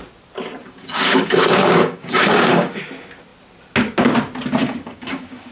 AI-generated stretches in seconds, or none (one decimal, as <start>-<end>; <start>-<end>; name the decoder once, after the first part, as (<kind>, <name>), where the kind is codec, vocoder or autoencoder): 0.6-2.8 (codec, DAC); 4.6-5.5